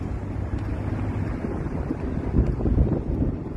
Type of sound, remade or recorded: recorded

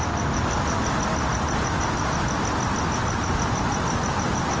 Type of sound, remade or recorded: recorded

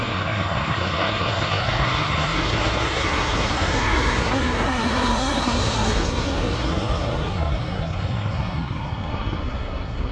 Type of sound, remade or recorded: remade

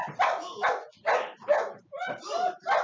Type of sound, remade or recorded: recorded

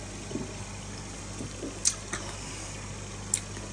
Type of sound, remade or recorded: recorded